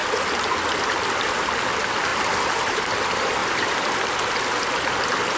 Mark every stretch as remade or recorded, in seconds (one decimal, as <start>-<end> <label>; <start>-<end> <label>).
0.0-2.1 recorded; 2.1-2.9 remade; 2.9-3.4 recorded; 3.4-4.0 remade; 4.0-5.4 recorded

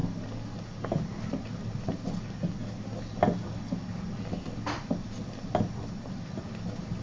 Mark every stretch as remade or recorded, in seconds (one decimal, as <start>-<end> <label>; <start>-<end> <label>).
0.0-7.0 recorded

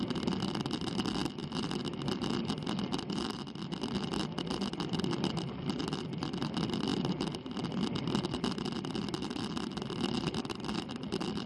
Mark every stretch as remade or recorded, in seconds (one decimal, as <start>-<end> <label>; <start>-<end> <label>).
0.0-11.5 recorded

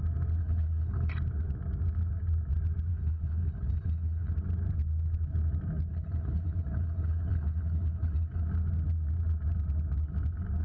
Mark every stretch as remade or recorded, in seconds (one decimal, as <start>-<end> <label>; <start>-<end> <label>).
0.0-0.4 recorded; 0.4-1.1 remade; 1.1-2.9 recorded; 2.9-4.3 remade; 4.3-5.9 recorded; 5.9-8.4 remade; 8.4-10.6 recorded

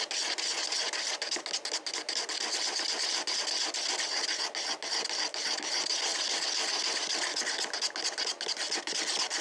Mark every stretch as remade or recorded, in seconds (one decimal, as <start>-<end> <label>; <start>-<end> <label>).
0.0-9.4 recorded

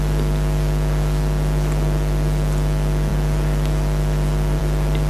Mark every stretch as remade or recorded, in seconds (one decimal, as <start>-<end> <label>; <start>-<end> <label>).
0.0-5.1 recorded

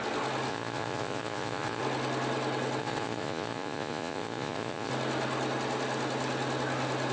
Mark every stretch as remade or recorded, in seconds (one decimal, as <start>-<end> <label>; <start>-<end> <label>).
0.0-0.5 recorded; 0.5-1.8 remade; 1.8-2.8 recorded; 2.8-4.9 remade; 4.9-7.1 recorded